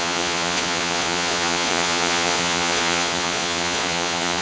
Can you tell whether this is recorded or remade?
remade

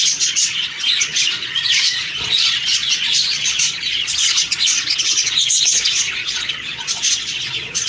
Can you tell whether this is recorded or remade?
remade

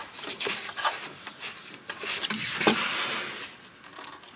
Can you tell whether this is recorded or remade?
recorded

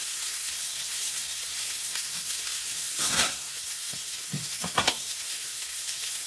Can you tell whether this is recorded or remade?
remade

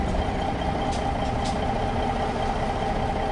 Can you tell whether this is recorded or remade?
recorded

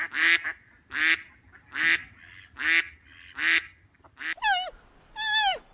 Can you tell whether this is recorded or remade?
recorded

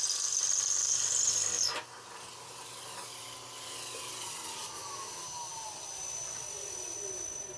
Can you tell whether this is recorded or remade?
recorded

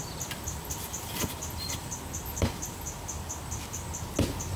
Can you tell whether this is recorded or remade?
recorded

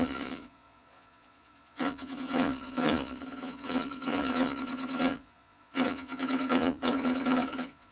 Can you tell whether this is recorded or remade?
remade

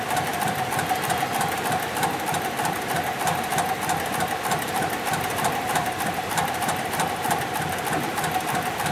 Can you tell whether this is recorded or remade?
remade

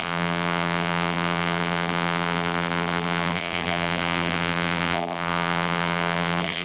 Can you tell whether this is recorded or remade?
remade